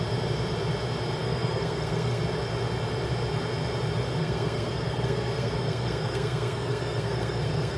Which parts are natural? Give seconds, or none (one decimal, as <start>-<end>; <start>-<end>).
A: 0.0-1.2; 2.2-4.2